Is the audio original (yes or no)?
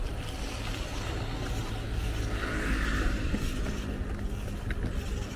yes